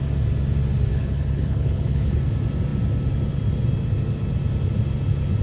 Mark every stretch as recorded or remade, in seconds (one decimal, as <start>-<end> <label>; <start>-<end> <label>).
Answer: 0.0-0.9 recorded; 0.9-2.2 remade; 2.2-5.4 recorded